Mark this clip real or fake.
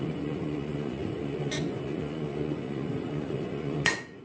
fake